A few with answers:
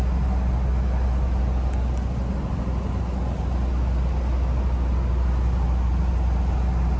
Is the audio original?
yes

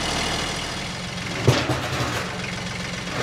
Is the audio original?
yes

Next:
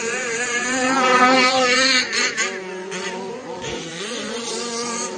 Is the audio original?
no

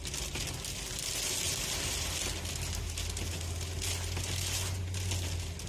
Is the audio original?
yes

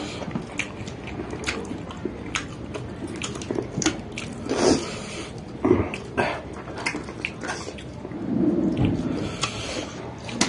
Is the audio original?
yes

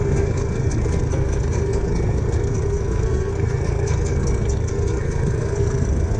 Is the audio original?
no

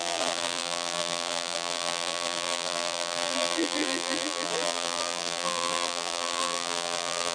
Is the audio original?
no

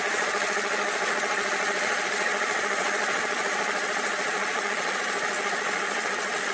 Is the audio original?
no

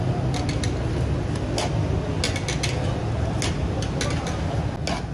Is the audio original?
yes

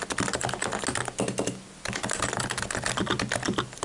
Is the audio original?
yes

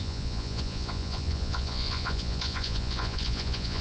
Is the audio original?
no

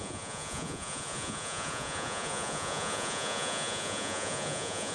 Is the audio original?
no